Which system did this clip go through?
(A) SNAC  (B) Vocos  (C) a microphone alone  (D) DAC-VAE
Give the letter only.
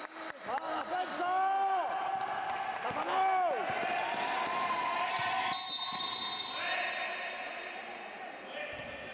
C